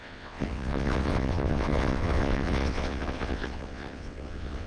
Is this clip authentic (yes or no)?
no